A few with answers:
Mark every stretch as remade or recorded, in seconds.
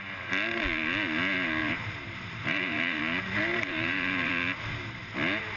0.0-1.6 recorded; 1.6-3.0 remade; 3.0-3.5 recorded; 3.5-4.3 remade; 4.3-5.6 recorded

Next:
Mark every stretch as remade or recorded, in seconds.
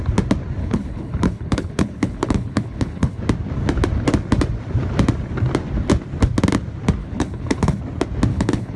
0.0-0.6 recorded; 0.6-3.2 remade; 3.2-7.0 recorded; 7.0-7.8 remade; 7.8-8.3 recorded; 8.3-8.8 remade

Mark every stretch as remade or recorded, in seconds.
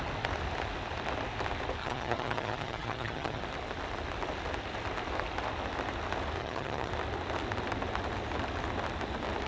0.0-1.8 recorded; 1.8-3.4 remade; 3.4-6.4 recorded; 6.4-6.9 remade; 6.9-9.5 recorded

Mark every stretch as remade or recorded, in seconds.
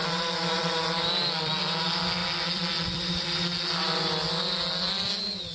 0.0-1.5 remade; 1.5-2.2 recorded; 2.2-3.5 remade; 3.5-5.5 recorded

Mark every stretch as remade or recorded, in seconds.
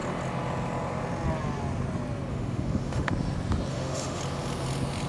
0.0-2.3 recorded; 2.3-3.1 remade; 3.1-3.7 recorded; 3.7-4.2 remade; 4.2-5.1 recorded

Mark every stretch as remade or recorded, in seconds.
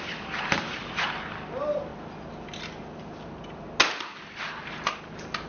0.0-1.9 remade; 1.9-5.5 recorded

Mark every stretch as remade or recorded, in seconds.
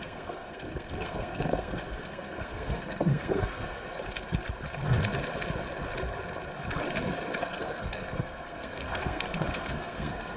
0.0-3.9 remade; 3.9-7.4 recorded; 7.4-10.4 remade